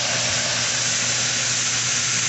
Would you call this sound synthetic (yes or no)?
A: no